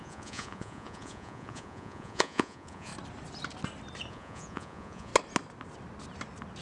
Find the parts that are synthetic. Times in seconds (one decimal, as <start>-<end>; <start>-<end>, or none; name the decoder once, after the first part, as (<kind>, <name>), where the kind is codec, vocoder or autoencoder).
0.0-2.9 (vocoder, Vocos); 4.1-5.1